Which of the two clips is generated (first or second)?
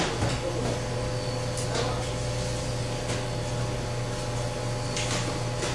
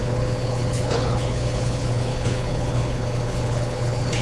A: second